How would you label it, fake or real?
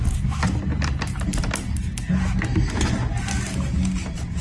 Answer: real